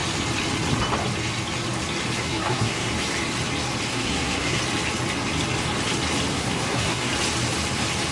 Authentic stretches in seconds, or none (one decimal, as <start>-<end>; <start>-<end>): 0.0-2.2; 2.9-3.9; 4.6-6.3; 7.1-8.1